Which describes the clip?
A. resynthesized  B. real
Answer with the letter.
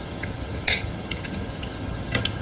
A